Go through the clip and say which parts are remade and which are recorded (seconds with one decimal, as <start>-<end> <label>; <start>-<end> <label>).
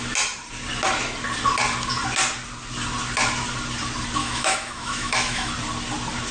0.0-4.2 recorded; 4.2-5.5 remade; 5.5-6.3 recorded